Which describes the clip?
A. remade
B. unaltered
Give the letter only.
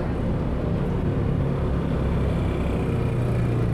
B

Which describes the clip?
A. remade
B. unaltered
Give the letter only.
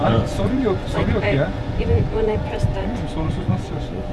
A